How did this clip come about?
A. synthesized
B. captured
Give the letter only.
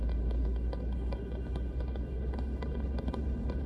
A